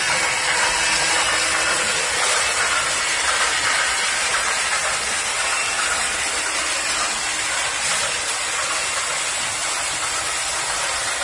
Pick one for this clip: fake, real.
real